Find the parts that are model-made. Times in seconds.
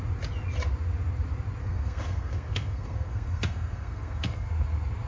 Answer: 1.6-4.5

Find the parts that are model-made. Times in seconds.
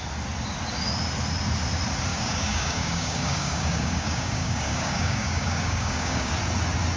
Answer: 2.1-6.3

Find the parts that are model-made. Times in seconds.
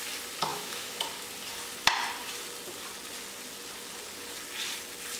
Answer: 0.5-1.0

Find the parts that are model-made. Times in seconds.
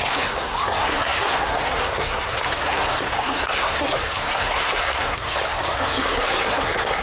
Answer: 0.0-7.0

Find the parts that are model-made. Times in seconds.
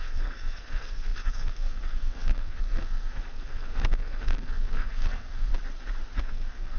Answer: 0.0-5.5; 6.2-6.8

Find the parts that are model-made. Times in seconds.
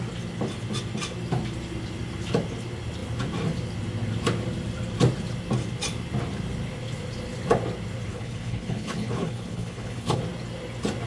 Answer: 8.1-10.2